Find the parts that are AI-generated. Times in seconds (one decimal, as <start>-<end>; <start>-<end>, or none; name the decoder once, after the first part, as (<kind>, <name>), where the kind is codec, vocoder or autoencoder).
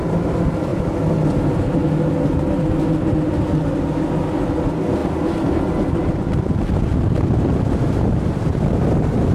none